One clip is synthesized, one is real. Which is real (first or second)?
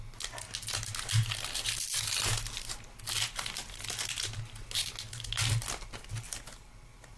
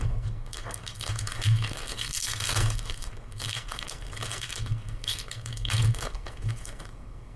first